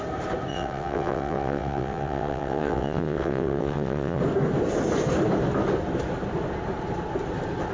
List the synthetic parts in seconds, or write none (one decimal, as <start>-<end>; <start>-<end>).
0.5-4.2